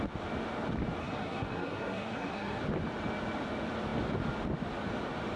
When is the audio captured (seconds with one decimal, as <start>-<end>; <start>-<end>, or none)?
0.0-1.0; 2.6-5.4